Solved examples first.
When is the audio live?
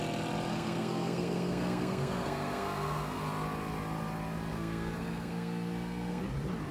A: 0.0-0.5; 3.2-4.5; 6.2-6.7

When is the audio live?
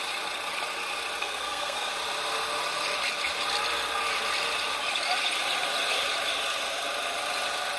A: 0.0-1.2; 1.9-7.8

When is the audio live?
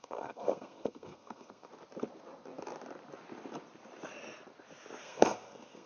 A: 1.7-5.0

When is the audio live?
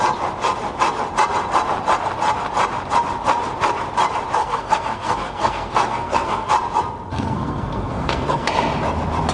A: 0.0-4.4; 6.5-7.1; 8.5-9.3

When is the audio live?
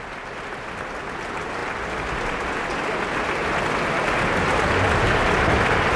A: 0.0-6.0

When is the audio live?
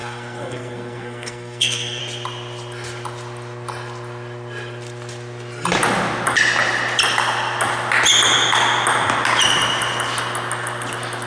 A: 2.0-11.3